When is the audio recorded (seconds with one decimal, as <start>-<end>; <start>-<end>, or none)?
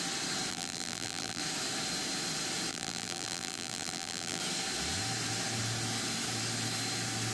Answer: 0.0-0.5; 1.4-2.7; 4.4-7.3